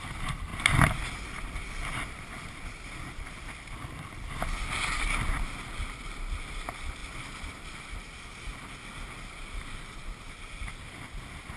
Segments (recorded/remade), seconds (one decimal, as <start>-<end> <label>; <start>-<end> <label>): 0.0-7.0 recorded; 7.0-7.7 remade; 7.7-11.6 recorded